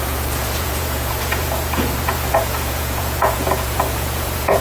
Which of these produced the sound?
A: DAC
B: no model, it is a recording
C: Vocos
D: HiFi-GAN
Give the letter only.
C